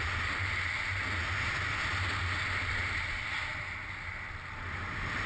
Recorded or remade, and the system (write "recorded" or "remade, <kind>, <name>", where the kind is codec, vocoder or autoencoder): recorded